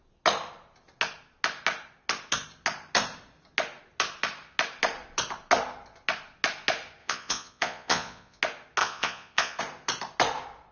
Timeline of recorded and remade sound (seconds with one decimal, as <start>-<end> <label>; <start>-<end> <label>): 0.0-7.0 recorded; 7.0-8.4 remade; 8.4-8.8 recorded; 8.8-9.6 remade; 9.6-10.7 recorded